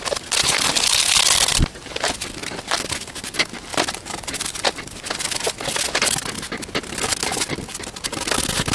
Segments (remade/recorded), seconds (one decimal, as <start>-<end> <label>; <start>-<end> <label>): 0.0-1.5 recorded; 1.5-2.1 remade; 2.1-3.7 recorded; 3.7-4.8 remade; 4.8-8.7 recorded